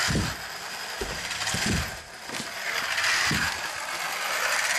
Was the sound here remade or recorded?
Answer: recorded